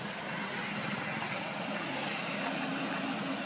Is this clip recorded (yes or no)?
yes